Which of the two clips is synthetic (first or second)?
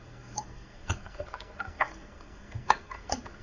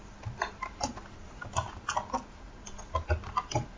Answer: first